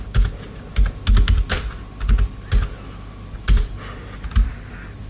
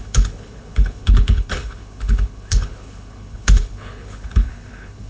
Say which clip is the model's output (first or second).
second